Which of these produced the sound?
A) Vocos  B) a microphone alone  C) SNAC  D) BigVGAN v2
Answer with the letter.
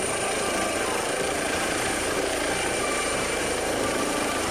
D